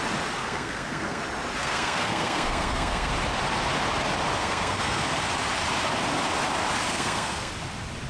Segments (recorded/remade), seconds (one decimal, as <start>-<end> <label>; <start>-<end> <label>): 0.0-0.4 recorded; 0.4-1.2 remade; 1.2-1.6 recorded; 1.6-3.1 remade; 3.1-4.4 recorded; 4.4-5.0 remade; 5.0-6.9 recorded; 6.9-7.5 remade; 7.5-8.1 recorded